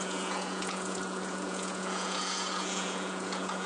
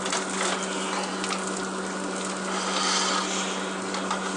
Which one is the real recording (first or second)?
second